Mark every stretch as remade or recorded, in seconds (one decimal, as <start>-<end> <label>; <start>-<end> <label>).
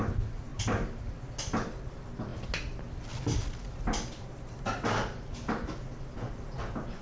0.0-7.0 recorded